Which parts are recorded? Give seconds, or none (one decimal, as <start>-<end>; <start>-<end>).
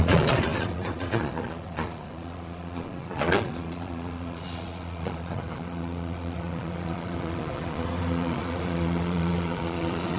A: none